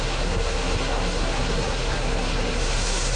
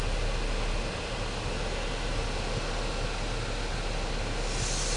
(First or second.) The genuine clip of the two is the second